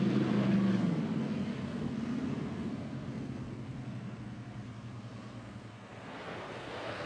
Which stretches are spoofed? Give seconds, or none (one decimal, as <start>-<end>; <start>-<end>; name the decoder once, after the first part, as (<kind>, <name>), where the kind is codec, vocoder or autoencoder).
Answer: 0.0-0.5 (codec, SNAC); 1.2-7.1

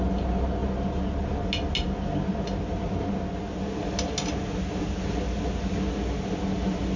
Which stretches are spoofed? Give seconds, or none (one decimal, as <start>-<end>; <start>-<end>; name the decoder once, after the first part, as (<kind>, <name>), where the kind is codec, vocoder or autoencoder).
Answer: none

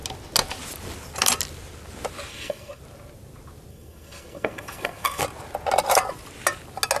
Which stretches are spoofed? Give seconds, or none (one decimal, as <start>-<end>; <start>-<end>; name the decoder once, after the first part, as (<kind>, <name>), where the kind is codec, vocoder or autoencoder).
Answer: 2.3-2.8 (codec, SNAC); 3.7-5.2

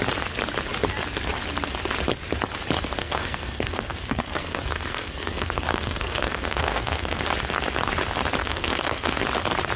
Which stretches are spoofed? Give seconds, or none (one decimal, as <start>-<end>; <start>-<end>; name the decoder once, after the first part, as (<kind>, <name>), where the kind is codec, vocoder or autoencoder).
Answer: 3.0-7.2 (codec, SNAC); 8.4-9.2

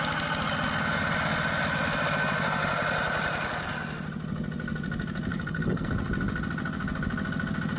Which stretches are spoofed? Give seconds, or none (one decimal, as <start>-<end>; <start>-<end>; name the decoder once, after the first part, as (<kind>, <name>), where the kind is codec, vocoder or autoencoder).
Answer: 5.3-5.9 (codec, SNAC)

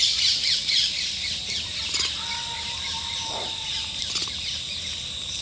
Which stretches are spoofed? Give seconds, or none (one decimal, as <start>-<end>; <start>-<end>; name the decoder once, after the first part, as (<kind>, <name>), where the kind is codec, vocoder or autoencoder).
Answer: none